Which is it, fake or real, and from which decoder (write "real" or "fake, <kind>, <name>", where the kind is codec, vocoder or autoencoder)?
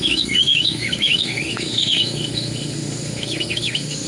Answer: fake, autoencoder, DAC-VAE